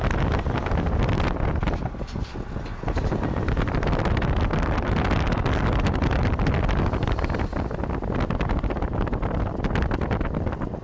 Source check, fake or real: real